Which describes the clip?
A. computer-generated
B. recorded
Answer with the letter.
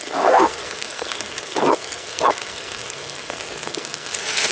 A